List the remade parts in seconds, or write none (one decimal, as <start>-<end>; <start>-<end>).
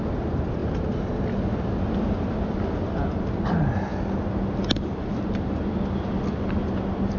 none